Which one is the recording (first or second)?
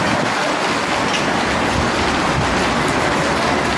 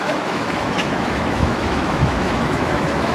first